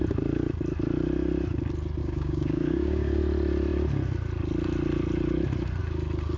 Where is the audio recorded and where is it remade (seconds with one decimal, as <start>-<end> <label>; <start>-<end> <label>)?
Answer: 0.0-2.0 recorded; 2.0-3.2 remade; 3.2-6.4 recorded